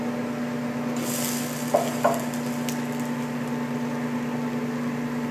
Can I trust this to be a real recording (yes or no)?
yes